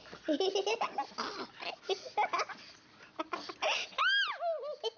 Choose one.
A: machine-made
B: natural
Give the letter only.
B